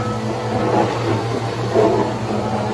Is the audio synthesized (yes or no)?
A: no